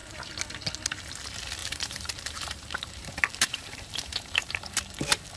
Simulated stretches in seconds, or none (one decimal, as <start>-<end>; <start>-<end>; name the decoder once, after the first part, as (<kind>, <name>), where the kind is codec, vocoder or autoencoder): 1.6-4.8 (vocoder, BigVGAN v2)